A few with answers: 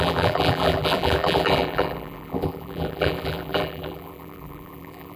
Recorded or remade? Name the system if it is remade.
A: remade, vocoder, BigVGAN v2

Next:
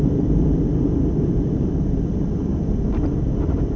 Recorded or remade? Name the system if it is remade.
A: remade, vocoder, BigVGAN v2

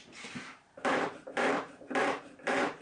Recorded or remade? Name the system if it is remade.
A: remade, vocoder, BigVGAN v2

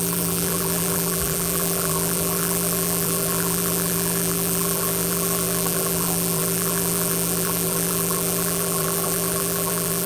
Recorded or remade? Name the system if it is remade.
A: remade, vocoder, BigVGAN v2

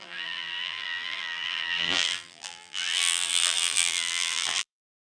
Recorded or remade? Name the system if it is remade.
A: remade, vocoder, BigVGAN v2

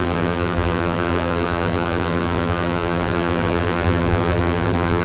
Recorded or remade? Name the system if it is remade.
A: remade, vocoder, BigVGAN v2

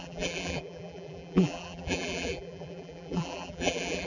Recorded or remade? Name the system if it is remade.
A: remade, vocoder, BigVGAN v2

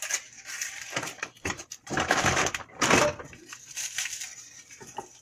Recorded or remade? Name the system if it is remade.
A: remade, vocoder, BigVGAN v2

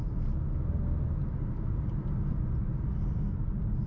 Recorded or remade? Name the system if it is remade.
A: recorded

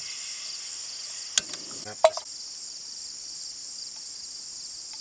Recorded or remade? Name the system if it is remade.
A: recorded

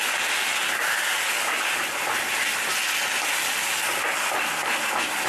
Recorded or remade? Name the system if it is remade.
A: recorded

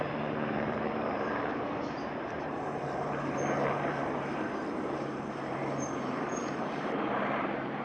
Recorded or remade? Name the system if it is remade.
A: remade, vocoder, BigVGAN v2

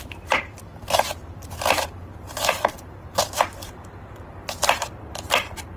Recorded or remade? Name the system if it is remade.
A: remade, vocoder, BigVGAN v2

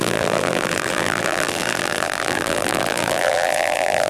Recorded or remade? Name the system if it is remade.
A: remade, vocoder, BigVGAN v2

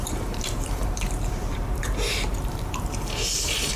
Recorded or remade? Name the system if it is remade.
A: remade, vocoder, BigVGAN v2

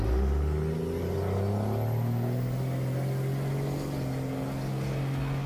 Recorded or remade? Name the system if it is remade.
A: recorded